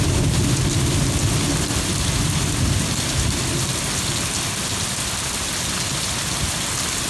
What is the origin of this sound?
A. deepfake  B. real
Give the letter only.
B